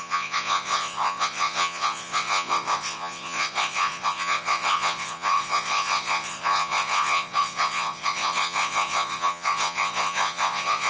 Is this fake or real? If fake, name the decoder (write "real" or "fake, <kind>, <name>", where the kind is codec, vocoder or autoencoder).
fake, vocoder, Vocos